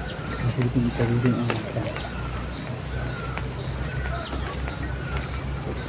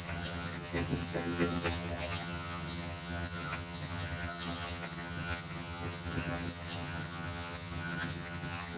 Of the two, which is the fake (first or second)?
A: second